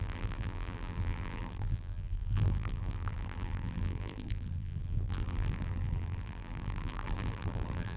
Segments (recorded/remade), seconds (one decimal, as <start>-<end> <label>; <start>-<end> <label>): 0.0-8.0 remade